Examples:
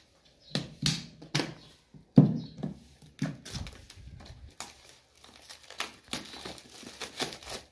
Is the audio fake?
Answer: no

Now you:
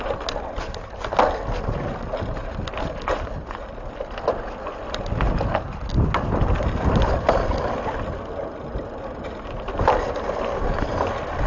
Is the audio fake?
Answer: no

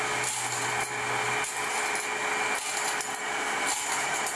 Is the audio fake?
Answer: no